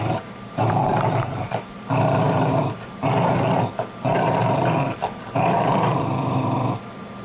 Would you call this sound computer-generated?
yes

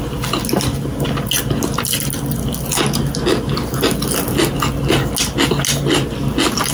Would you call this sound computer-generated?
no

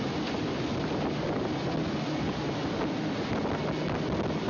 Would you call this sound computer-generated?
no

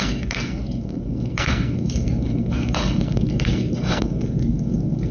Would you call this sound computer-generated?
yes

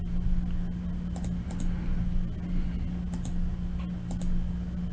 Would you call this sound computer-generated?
no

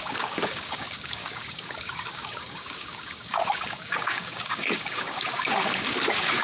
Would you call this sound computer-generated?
yes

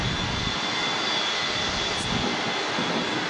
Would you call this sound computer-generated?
no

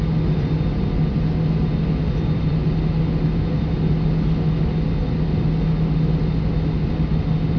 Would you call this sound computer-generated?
no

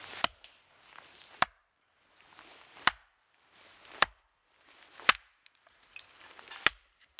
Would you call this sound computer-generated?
no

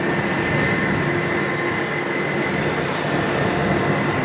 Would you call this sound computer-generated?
no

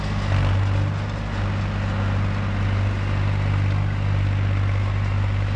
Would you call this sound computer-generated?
no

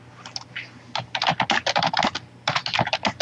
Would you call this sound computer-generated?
no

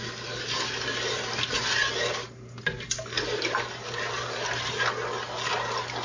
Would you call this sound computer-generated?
no